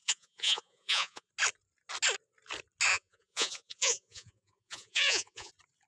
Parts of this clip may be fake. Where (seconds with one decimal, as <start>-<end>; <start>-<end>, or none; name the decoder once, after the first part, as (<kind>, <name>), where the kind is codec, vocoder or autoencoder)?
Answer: 0.0-1.3 (vocoder, Vocos); 2.9-5.5